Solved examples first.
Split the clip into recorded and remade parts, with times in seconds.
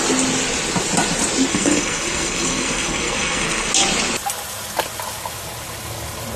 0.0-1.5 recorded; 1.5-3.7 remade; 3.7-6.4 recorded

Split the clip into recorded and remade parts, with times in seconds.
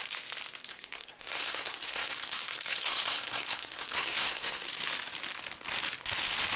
0.0-0.7 recorded; 0.7-4.7 remade; 4.7-6.6 recorded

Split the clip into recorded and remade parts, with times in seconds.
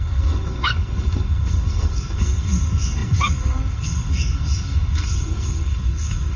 0.0-6.4 remade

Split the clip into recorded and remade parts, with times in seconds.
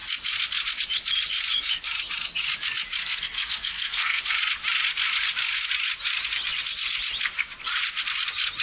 0.0-3.0 recorded; 3.0-4.2 remade; 4.2-8.6 recorded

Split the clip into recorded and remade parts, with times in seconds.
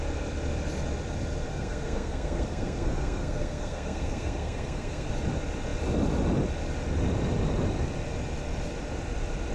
0.0-1.5 recorded; 1.5-5.1 remade; 5.1-9.5 recorded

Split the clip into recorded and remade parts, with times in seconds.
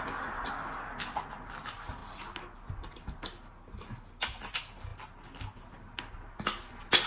0.0-7.1 recorded